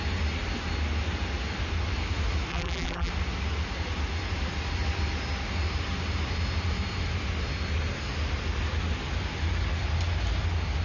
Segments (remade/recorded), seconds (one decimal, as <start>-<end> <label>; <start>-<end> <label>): 0.0-2.5 recorded; 2.5-3.1 remade; 3.1-10.8 recorded